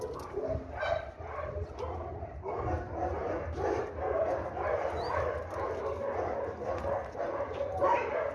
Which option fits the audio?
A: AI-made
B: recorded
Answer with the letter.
B